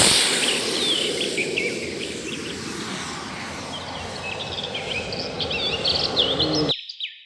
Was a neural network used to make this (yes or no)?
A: no